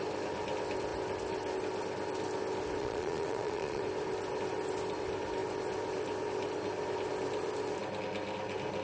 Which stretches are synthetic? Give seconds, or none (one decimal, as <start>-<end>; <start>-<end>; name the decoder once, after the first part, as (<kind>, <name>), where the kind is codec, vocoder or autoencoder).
2.8-3.8 (vocoder, Vocos)